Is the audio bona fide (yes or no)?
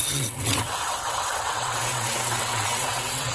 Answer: no